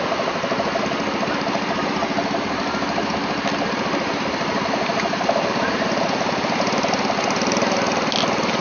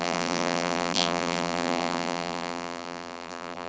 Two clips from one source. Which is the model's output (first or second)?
second